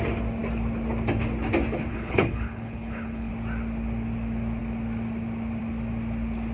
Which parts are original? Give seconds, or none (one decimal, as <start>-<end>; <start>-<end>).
0.0-1.9; 3.3-6.5

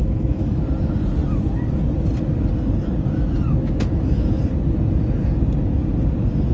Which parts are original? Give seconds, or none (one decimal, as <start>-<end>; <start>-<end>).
0.6-3.6; 4.4-6.5